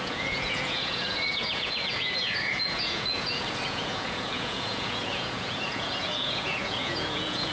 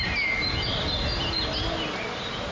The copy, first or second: first